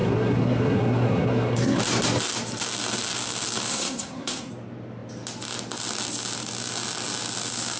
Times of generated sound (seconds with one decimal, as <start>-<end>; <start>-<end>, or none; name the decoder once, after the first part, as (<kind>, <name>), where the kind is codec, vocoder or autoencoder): 0.0-1.8 (codec, SNAC); 3.7-4.5